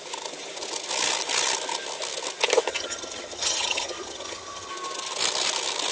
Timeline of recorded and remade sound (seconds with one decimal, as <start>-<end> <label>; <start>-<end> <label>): 0.0-2.7 recorded; 2.7-4.7 remade; 4.7-5.9 recorded